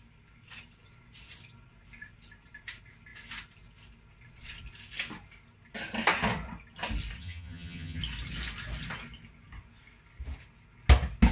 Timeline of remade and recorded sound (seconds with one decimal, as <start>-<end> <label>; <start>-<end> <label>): 0.0-7.2 recorded; 7.2-8.0 remade; 8.0-11.3 recorded